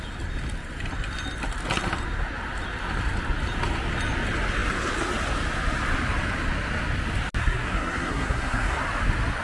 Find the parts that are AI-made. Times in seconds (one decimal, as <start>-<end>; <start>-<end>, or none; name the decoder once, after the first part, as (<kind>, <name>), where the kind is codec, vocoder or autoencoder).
7.4-8.8 (codec, SNAC)